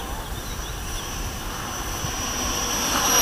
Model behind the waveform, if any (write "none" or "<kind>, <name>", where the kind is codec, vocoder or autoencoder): none